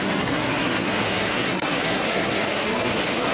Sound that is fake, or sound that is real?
fake